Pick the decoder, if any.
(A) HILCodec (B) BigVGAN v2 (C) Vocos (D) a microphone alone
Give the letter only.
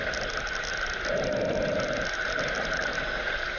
D